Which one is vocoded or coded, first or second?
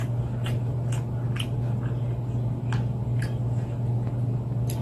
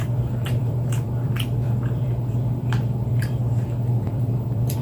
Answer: second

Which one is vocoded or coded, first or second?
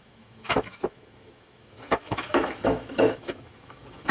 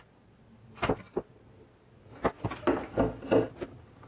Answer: first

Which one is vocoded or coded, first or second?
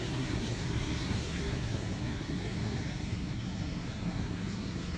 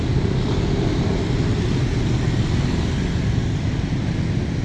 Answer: first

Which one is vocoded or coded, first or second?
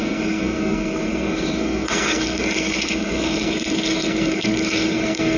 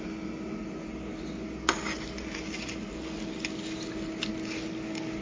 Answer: first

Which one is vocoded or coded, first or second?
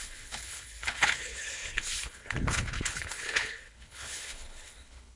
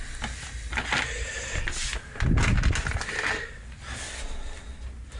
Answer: first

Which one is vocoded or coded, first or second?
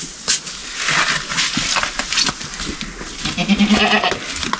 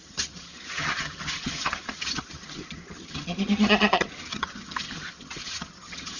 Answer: second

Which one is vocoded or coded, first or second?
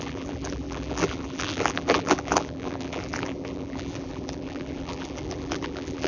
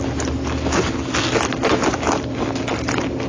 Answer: first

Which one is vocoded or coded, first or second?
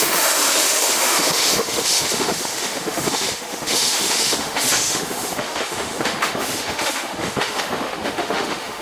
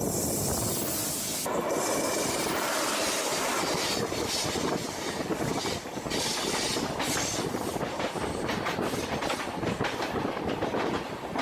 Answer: first